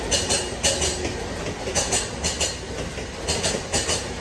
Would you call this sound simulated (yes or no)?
no